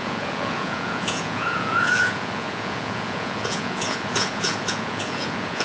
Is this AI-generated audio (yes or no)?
yes